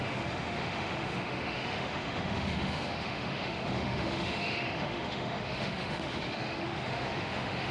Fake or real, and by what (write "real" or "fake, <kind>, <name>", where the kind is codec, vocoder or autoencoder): fake, autoencoder, DAC-VAE